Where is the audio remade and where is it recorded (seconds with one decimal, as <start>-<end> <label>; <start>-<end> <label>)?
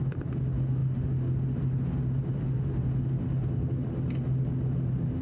0.0-5.2 recorded